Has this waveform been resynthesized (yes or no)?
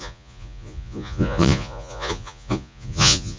yes